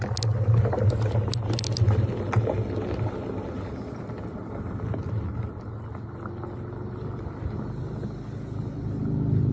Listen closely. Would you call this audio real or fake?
real